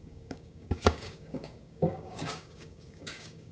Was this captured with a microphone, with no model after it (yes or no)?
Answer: no